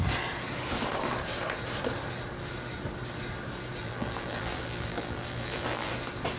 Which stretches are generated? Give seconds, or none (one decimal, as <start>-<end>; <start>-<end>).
3.8-5.9